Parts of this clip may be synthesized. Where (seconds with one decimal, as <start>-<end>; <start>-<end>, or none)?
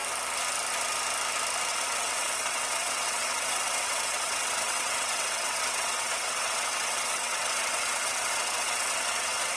1.7-9.6